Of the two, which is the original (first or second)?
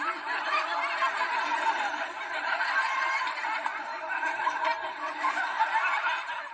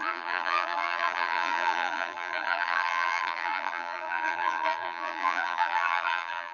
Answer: first